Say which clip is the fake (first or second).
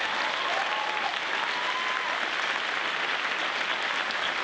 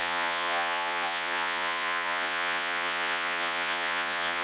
second